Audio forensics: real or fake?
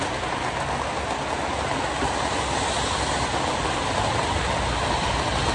real